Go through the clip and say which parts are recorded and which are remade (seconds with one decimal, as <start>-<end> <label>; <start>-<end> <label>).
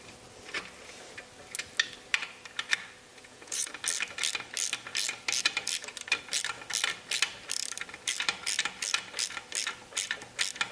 0.0-3.1 recorded; 3.1-3.7 remade; 3.7-10.7 recorded